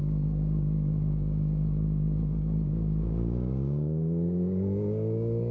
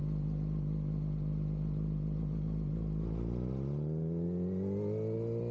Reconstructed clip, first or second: first